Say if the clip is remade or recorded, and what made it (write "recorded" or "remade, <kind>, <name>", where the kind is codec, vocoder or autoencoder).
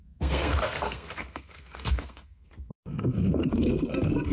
remade, codec, SNAC